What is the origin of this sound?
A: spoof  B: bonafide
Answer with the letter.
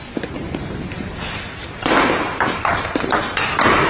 A